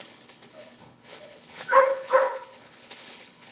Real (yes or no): no